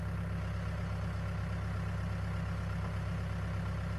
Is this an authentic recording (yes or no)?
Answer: yes